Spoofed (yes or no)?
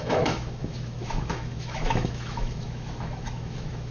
yes